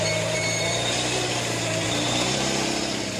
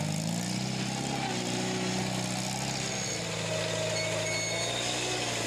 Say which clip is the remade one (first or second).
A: first